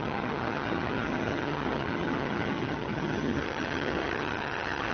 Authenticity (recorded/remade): remade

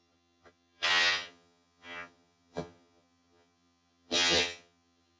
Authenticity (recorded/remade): remade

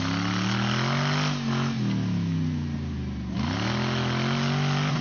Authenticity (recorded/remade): recorded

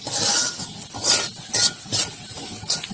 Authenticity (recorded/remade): recorded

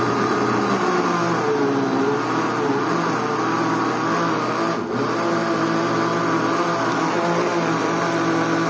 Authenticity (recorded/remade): recorded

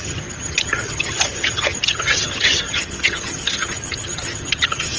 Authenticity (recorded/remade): remade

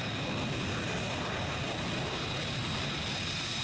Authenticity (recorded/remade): recorded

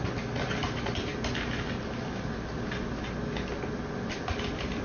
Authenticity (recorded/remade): recorded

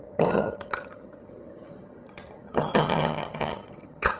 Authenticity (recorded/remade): remade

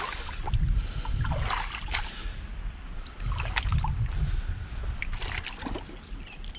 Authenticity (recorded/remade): recorded